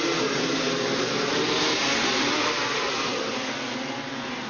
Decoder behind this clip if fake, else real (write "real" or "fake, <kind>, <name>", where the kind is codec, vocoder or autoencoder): real